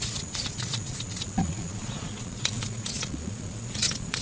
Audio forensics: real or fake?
fake